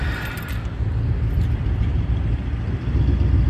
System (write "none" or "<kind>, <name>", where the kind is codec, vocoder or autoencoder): vocoder, BigVGAN v2